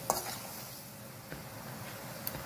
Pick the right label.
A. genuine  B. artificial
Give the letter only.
A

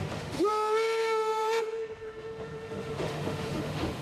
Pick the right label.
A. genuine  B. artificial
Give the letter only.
B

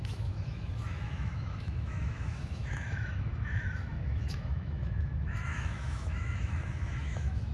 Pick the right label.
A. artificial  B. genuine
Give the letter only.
A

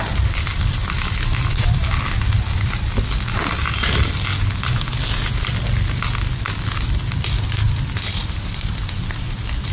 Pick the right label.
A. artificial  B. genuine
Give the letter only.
B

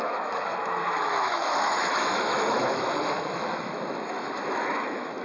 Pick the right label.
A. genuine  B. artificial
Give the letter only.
B